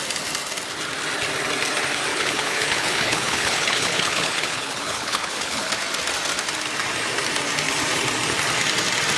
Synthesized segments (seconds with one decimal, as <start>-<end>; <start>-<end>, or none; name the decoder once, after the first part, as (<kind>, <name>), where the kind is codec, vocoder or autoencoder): 2.1-5.7 (codec, HILCodec)